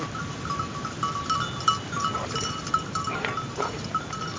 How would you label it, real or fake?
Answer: real